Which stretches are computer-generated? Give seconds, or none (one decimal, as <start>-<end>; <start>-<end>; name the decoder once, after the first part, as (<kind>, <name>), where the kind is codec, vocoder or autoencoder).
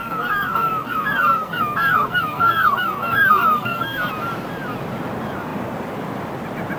0.0-4.1 (codec, SNAC)